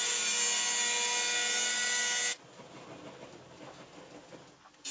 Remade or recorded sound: recorded